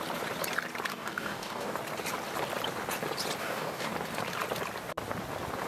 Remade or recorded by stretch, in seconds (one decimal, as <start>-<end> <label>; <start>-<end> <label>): 0.0-0.9 recorded; 0.9-1.8 remade; 1.8-3.4 recorded; 3.4-3.9 remade; 3.9-5.7 recorded